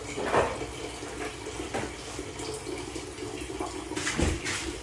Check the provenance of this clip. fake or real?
real